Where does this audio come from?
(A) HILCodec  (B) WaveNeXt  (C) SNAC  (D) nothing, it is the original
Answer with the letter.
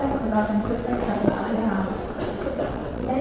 B